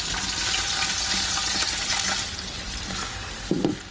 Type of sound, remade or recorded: recorded